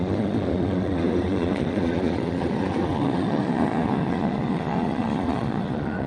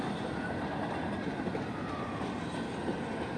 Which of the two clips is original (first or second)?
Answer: second